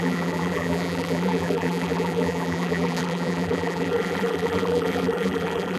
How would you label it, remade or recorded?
remade